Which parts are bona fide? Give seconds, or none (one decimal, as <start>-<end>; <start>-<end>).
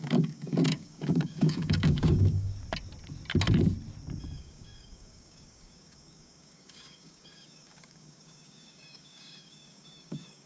2.5-4.2